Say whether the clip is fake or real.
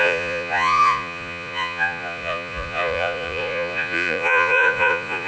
fake